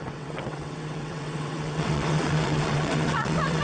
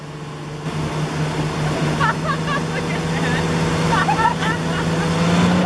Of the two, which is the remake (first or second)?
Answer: first